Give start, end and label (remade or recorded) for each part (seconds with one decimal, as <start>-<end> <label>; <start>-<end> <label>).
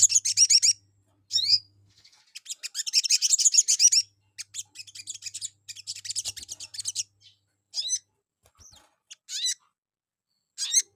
0.0-1.5 recorded; 1.5-2.2 remade; 2.2-11.0 recorded